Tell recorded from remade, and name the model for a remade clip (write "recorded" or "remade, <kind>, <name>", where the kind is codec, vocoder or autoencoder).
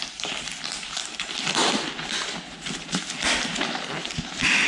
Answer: recorded